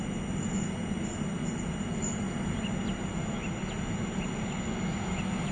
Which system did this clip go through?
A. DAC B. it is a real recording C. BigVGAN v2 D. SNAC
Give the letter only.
B